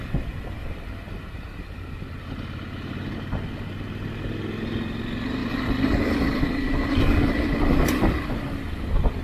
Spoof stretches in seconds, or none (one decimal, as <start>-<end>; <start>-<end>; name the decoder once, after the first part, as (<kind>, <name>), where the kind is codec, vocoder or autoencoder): none